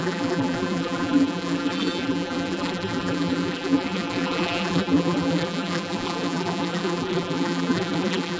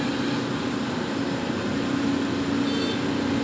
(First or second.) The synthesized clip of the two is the first